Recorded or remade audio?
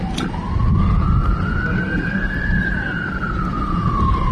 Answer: recorded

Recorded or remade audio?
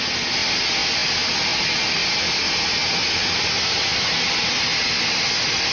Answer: recorded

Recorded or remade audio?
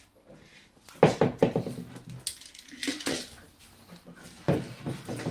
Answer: recorded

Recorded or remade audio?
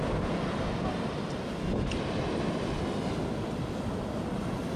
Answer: recorded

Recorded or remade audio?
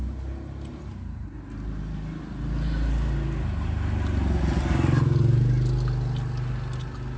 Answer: recorded